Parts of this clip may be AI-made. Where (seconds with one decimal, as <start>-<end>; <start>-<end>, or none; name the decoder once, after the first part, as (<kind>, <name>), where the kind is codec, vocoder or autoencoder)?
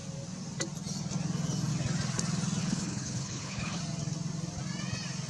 2.6-3.8 (codec, HILCodec)